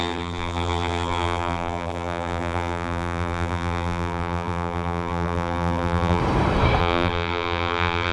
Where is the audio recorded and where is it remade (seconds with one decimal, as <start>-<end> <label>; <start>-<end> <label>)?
0.0-6.2 remade; 6.2-6.8 recorded; 6.8-8.1 remade

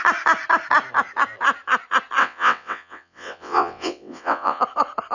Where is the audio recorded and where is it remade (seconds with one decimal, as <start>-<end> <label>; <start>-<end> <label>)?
0.0-2.2 recorded; 2.2-4.6 remade; 4.6-5.1 recorded

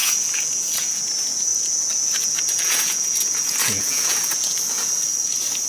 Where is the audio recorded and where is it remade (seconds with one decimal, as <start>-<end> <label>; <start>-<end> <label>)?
0.0-1.1 remade; 1.1-1.5 recorded; 1.5-4.9 remade; 4.9-5.7 recorded